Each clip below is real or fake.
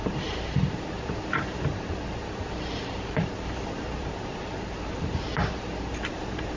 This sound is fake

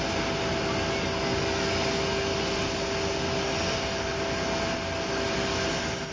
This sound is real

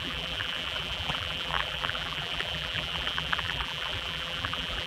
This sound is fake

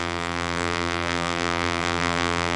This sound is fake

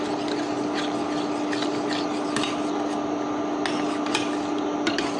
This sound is real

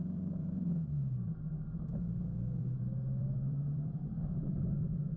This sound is fake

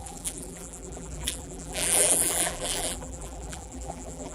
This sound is fake